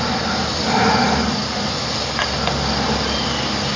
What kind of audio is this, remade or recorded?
recorded